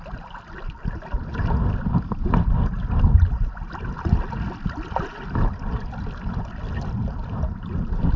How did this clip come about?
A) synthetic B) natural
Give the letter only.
B